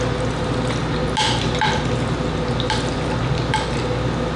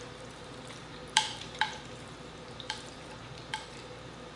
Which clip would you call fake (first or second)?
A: second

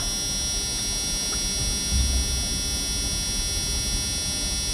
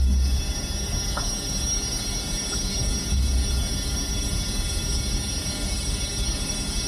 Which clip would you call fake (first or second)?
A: second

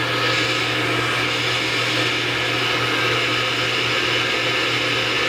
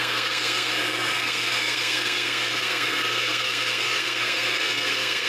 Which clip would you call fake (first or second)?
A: second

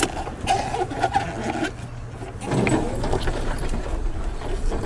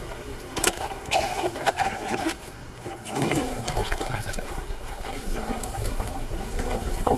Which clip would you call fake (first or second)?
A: second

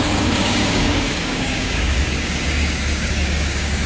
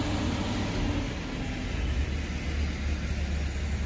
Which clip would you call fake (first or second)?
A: first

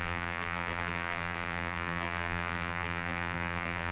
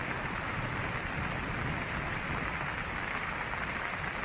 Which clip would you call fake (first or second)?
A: first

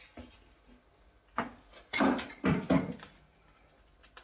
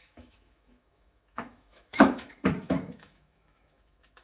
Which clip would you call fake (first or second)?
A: second